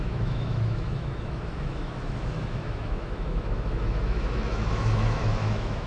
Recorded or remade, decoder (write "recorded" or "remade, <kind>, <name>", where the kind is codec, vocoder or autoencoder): remade, autoencoder, DAC-VAE